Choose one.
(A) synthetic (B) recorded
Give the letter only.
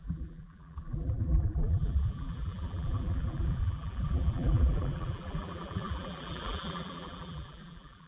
A